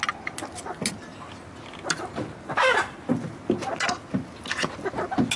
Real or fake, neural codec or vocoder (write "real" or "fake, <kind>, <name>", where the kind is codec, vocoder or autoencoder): real